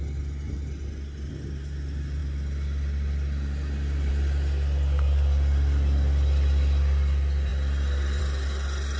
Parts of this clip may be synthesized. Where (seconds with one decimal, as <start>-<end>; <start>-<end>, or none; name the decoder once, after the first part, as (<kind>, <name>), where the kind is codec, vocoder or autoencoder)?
none